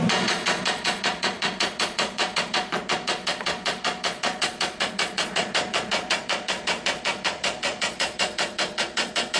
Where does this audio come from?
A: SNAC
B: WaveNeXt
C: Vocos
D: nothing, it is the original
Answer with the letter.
C